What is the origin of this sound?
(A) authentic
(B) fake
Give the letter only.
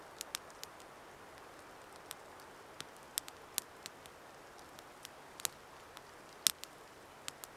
A